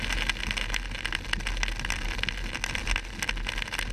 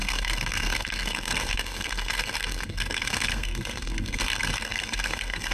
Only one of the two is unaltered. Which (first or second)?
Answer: first